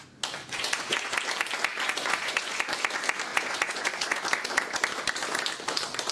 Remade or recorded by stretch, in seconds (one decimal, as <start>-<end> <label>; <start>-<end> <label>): 0.0-0.4 recorded; 0.4-1.1 remade; 1.1-1.7 recorded; 1.7-2.6 remade; 2.6-3.3 recorded; 3.3-4.2 remade; 4.2-6.1 recorded